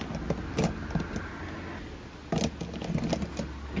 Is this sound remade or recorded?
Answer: recorded